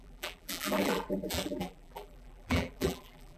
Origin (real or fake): fake